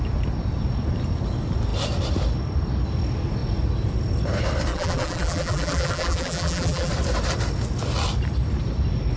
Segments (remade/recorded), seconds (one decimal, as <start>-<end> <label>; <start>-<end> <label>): 0.0-4.7 recorded; 4.7-6.9 remade; 6.9-9.2 recorded